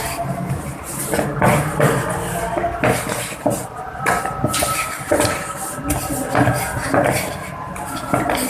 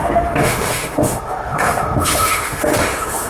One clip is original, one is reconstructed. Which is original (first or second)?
first